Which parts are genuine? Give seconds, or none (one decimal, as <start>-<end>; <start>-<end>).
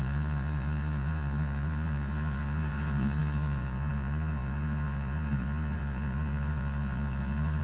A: none